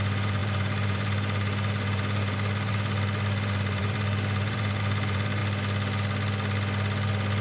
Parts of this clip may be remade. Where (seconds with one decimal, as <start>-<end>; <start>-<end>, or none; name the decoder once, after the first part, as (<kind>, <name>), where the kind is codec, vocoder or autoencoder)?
0.0-5.4 (vocoder, BigVGAN v2)